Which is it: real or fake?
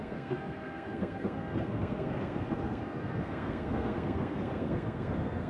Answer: fake